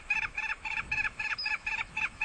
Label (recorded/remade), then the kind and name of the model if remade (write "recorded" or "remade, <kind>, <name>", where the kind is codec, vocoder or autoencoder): remade, autoencoder, DAC-VAE